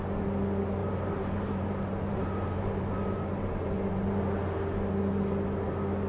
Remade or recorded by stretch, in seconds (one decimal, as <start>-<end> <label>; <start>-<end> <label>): 0.0-0.8 recorded; 0.8-4.2 remade; 4.2-6.1 recorded